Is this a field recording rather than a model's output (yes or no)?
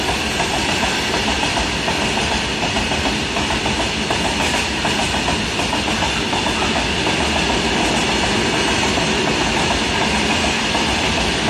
yes